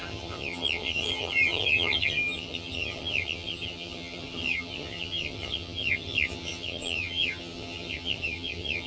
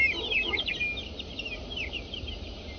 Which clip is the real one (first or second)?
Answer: second